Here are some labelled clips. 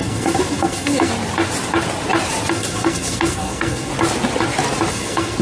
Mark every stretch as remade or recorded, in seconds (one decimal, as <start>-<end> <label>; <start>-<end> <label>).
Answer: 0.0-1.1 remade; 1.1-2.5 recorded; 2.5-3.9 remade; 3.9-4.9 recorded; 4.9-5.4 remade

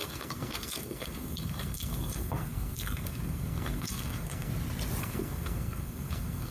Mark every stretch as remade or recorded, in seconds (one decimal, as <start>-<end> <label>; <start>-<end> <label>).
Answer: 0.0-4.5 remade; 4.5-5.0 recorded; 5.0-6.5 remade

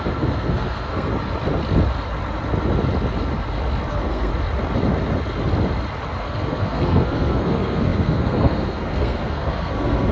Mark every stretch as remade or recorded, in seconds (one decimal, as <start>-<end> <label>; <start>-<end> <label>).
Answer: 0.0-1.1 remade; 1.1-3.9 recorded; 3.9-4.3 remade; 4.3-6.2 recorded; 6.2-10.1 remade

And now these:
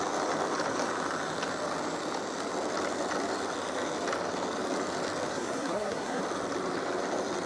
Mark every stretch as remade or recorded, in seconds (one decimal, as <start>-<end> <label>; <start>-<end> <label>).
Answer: 0.0-5.3 recorded; 5.3-6.2 remade; 6.2-7.5 recorded

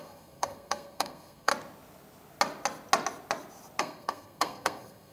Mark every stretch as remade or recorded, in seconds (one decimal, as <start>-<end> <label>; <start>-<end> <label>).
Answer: 0.0-1.5 remade; 1.5-3.8 recorded; 3.8-5.1 remade

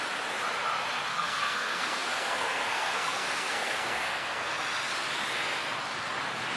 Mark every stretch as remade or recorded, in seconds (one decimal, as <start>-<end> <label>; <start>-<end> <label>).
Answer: 0.0-1.1 recorded; 1.1-4.6 remade; 4.6-6.6 recorded